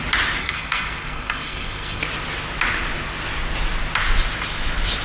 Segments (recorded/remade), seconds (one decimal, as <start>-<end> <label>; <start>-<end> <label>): 0.0-0.4 recorded; 0.4-2.0 remade; 2.0-5.0 recorded